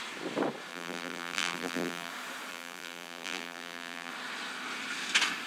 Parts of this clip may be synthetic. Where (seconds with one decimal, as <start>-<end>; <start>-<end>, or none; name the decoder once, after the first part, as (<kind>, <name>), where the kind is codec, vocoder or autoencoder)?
0.7-2.1 (vocoder, BigVGAN v2); 2.5-4.1